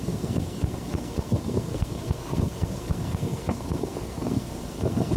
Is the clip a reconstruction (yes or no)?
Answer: yes